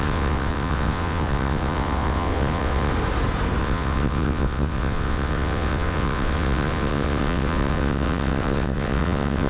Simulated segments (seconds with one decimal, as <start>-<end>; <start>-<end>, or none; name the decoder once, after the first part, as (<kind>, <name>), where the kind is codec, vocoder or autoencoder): 0.0-2.9 (vocoder, WaveNeXt); 3.6-9.5